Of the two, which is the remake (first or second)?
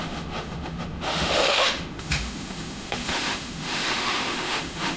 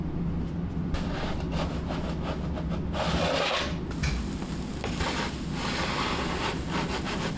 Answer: first